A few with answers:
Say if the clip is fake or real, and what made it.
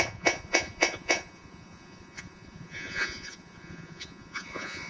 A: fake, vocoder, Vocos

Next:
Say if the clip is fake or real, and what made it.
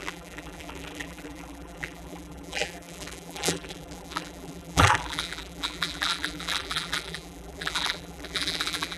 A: fake, vocoder, BigVGAN v2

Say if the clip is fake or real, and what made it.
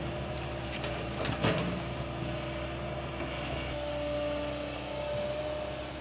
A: real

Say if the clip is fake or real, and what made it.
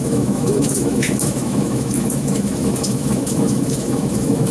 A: fake, autoencoder, DAC-VAE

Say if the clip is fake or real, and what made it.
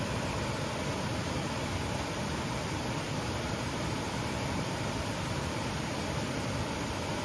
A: fake, vocoder, BigVGAN v2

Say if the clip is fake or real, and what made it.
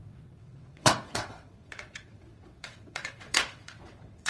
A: fake, vocoder, WaveNeXt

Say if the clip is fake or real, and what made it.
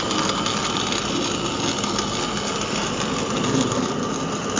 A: real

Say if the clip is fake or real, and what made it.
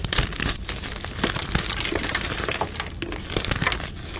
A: real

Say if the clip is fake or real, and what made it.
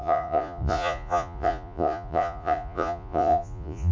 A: fake, vocoder, Vocos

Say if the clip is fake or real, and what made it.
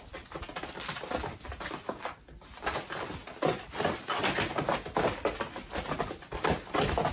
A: real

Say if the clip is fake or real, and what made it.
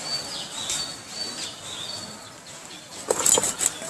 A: real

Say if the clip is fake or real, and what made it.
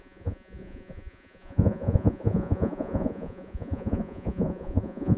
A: fake, vocoder, Vocos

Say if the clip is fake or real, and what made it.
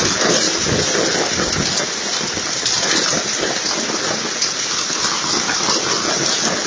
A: real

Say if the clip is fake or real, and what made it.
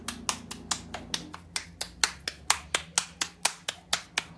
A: real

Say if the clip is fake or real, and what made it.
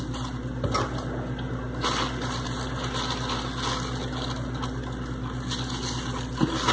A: real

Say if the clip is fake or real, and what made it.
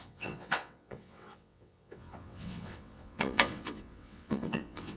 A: fake, vocoder, WaveNeXt